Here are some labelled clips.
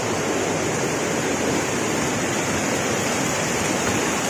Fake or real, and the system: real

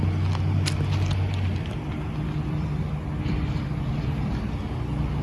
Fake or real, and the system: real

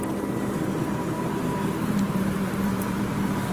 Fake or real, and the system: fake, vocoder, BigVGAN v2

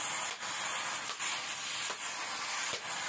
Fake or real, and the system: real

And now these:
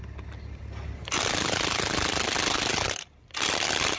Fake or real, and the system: real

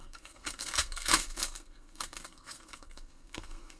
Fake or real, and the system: fake, codec, SNAC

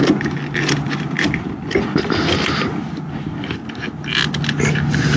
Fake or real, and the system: real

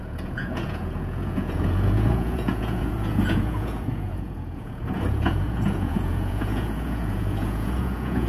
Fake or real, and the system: fake, vocoder, Vocos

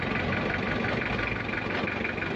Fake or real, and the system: real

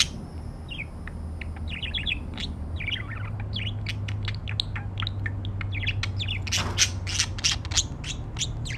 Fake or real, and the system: real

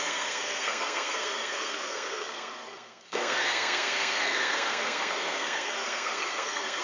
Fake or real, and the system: fake, codec, SNAC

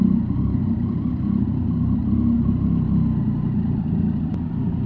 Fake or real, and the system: real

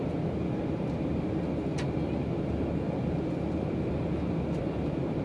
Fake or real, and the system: real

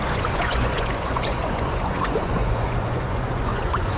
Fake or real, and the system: fake, vocoder, Vocos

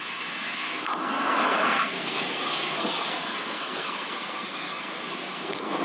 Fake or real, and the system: fake, codec, SNAC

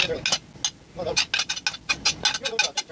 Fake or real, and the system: real